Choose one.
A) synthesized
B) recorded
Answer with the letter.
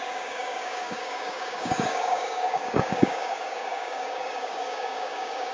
A